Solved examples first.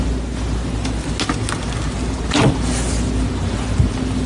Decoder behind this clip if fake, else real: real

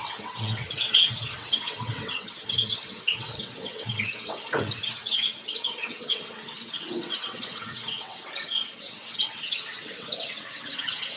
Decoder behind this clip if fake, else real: fake, vocoder, WaveNeXt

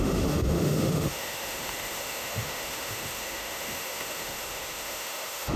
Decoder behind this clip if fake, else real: fake, autoencoder, DAC-VAE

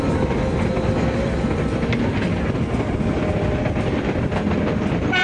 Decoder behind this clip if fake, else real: real